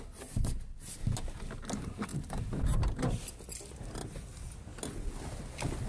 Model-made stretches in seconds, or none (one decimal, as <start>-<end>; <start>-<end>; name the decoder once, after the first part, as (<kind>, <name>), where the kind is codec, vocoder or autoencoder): 2.1-3.3 (vocoder, BigVGAN v2)